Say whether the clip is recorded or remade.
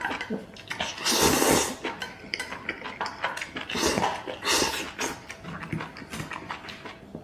recorded